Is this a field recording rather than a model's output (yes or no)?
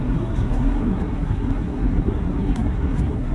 no